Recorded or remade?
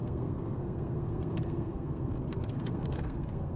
remade